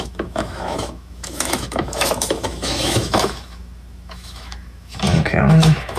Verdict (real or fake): fake